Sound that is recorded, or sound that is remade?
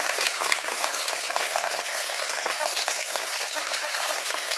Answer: remade